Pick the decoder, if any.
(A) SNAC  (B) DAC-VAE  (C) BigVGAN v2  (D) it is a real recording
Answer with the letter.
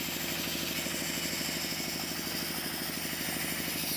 D